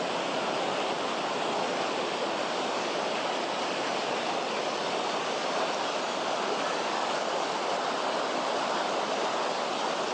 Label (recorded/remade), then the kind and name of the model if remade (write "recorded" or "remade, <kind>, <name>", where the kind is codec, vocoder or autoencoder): recorded